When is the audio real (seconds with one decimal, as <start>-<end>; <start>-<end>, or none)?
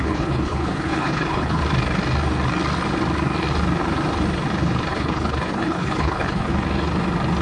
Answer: 1.6-4.9; 6.5-7.4